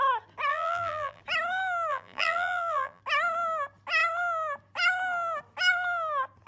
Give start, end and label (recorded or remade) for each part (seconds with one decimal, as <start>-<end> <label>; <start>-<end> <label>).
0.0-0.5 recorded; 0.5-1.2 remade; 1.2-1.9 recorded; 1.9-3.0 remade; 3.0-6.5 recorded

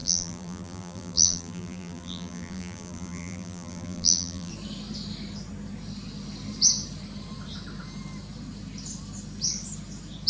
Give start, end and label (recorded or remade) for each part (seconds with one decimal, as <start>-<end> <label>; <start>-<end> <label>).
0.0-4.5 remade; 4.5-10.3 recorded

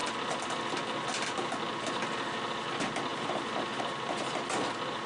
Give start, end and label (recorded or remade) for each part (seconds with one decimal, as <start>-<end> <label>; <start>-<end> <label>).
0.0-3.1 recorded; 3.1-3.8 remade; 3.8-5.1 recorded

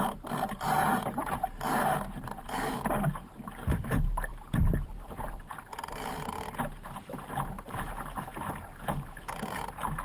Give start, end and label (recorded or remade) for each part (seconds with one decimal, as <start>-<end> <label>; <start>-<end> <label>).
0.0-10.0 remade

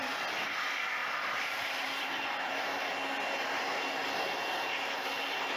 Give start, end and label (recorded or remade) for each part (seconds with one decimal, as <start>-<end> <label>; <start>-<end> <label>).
0.0-1.0 recorded; 1.0-2.5 remade; 2.5-5.6 recorded